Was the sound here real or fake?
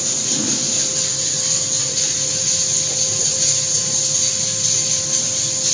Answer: real